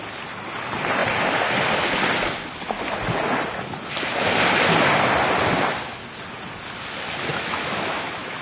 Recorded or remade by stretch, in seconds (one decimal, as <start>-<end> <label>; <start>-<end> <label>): 0.0-7.3 recorded; 7.3-7.9 remade; 7.9-8.4 recorded